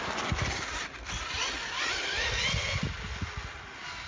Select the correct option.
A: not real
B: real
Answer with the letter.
B